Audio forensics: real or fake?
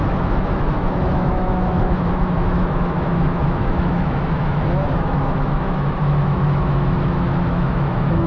fake